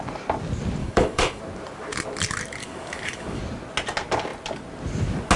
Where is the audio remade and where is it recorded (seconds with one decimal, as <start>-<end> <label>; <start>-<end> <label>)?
0.0-0.8 recorded; 0.8-1.4 remade; 1.4-2.6 recorded; 2.6-3.4 remade; 3.4-5.4 recorded